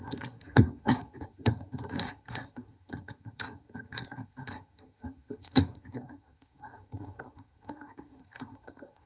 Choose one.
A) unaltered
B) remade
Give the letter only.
B